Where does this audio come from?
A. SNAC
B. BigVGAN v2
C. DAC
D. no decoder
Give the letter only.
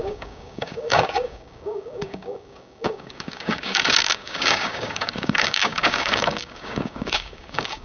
C